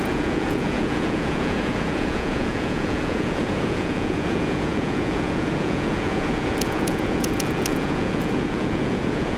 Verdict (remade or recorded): remade